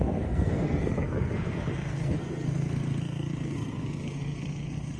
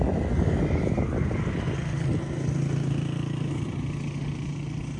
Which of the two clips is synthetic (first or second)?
first